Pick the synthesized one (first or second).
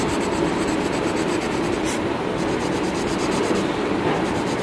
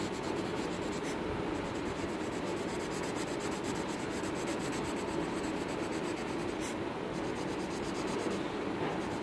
first